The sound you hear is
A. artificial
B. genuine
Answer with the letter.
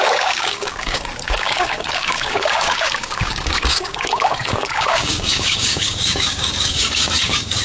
A